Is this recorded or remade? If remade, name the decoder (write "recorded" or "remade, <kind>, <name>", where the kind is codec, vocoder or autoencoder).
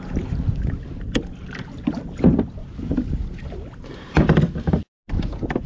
recorded